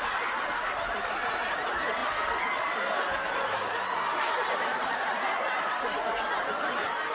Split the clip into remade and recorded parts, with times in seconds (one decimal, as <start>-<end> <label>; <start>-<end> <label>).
0.0-7.1 recorded